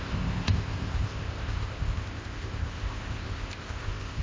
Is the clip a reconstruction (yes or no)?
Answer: yes